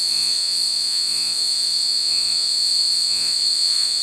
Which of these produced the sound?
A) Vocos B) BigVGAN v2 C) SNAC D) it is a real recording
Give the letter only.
A